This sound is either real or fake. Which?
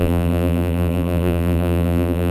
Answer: fake